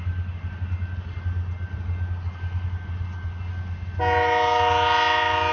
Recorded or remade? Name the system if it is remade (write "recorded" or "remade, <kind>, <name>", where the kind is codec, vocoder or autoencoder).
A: recorded